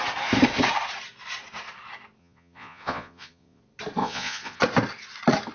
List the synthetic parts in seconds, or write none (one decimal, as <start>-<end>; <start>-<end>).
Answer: 2.2-3.6; 4.0-4.6